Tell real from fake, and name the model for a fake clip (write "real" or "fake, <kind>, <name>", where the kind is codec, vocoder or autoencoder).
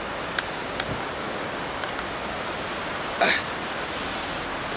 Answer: real